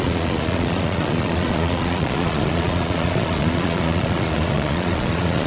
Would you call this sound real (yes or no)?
no